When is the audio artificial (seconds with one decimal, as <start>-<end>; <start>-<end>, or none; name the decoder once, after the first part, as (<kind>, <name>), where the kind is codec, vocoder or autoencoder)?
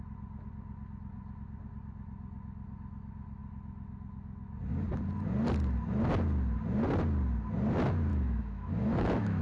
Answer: 8.1-9.4 (autoencoder, DAC-VAE)